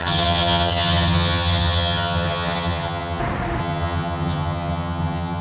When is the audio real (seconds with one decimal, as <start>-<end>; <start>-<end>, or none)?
3.2-3.6